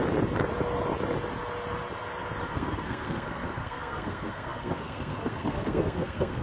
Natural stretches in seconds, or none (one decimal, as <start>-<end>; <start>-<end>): 0.0-2.4